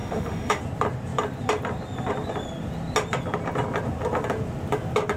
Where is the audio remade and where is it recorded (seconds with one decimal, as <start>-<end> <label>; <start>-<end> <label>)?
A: 0.0-0.6 remade; 0.6-5.2 recorded